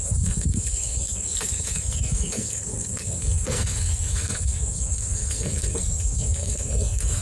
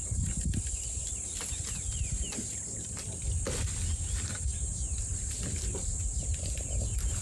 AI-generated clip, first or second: first